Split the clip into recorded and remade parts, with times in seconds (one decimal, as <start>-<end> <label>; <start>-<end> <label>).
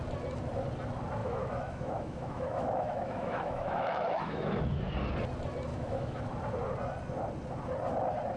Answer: 0.0-1.2 recorded; 1.2-4.6 remade; 4.6-5.7 recorded; 5.7-6.3 remade; 6.3-8.4 recorded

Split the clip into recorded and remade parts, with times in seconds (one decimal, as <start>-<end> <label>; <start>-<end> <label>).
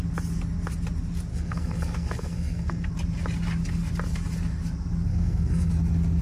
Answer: 0.0-1.3 recorded; 1.3-2.9 remade; 2.9-5.1 recorded; 5.1-5.7 remade; 5.7-6.2 recorded